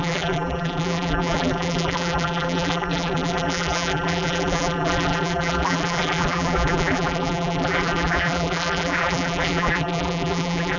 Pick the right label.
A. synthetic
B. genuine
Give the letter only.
A